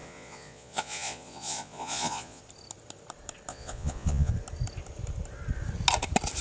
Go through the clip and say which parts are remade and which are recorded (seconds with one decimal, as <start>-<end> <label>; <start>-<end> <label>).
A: 0.0-2.4 remade; 2.4-3.5 recorded; 3.5-4.3 remade; 4.3-6.4 recorded